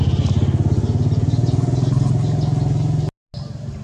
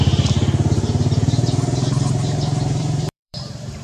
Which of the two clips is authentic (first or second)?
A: first